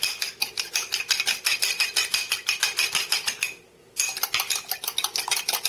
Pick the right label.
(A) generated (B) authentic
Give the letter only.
B